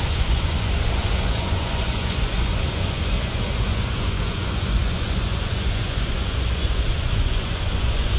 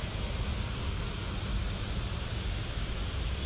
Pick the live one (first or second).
second